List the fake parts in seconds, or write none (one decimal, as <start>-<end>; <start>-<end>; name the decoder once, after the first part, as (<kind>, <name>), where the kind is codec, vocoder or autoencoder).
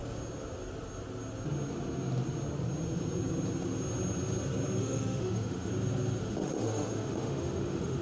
4.8-5.7 (autoencoder, DAC-VAE); 6.2-8.0